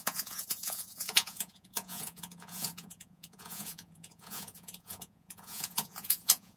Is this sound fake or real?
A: fake